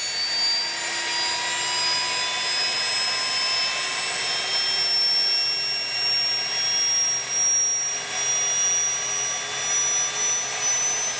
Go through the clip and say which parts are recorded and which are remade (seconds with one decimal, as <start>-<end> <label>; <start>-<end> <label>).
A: 0.0-11.2 recorded